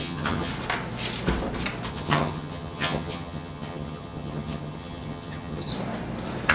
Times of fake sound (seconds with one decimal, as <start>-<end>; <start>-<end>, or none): 0.0-0.5; 1.9-5.7